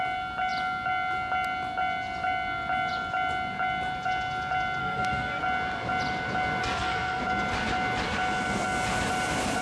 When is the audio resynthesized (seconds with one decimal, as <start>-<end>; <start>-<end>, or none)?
4.8-5.4; 6.6-7.2